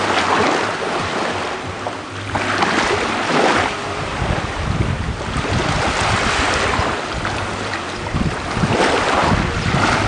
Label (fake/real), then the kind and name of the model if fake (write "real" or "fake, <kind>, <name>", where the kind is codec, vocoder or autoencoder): real